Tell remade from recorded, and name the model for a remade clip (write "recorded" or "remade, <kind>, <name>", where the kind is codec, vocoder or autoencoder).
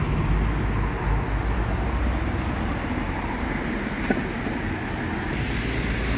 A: recorded